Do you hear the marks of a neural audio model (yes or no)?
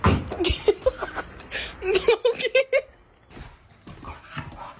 no